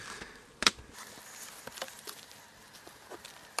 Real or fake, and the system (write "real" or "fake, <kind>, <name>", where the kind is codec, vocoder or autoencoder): real